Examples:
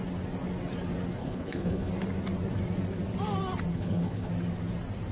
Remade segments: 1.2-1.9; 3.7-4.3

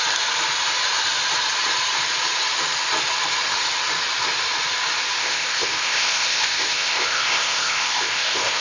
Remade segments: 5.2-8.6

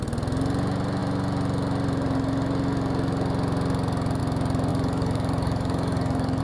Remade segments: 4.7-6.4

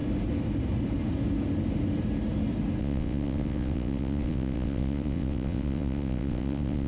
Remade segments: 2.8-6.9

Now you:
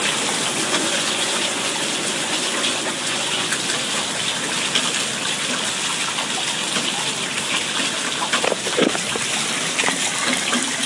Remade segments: 0.5-3.6

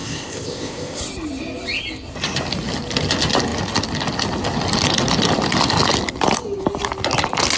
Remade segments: 0.0-1.0